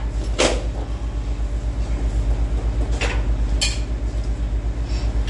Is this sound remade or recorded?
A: recorded